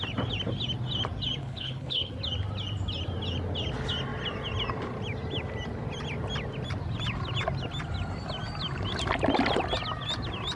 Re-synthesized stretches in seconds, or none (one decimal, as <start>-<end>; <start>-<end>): 1.4-2.1